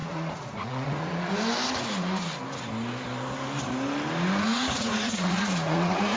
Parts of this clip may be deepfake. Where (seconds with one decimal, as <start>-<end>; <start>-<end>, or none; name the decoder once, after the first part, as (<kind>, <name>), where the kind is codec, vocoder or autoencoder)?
0.0-1.3 (vocoder, Vocos); 4.5-6.2